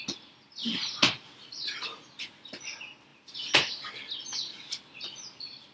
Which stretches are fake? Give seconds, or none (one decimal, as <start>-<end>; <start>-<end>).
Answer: 0.6-2.0; 3.1-3.9